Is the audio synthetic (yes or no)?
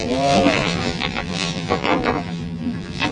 yes